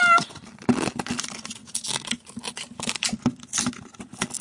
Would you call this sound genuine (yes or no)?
yes